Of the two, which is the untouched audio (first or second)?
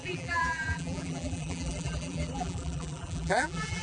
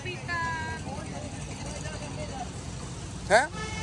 second